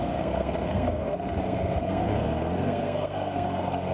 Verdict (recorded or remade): remade